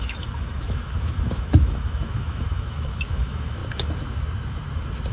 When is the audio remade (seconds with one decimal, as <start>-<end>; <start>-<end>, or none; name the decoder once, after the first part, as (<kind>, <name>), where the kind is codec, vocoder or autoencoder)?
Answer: 0.0-3.6 (autoencoder, DAC-VAE)